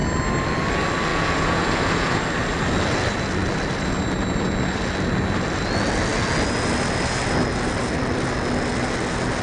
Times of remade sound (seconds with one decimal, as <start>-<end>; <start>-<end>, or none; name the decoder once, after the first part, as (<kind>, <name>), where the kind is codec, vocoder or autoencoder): 1.1-2.2 (vocoder, Vocos)